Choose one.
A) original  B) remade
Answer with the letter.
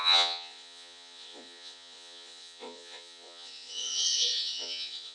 B